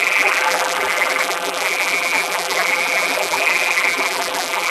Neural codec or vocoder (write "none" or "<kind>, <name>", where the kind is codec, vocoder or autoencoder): vocoder, BigVGAN v2